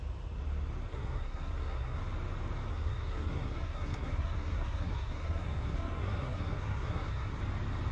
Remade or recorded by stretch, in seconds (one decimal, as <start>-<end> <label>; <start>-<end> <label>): 0.0-0.9 recorded; 0.9-2.0 remade; 2.0-2.7 recorded; 2.7-7.4 remade; 7.4-7.9 recorded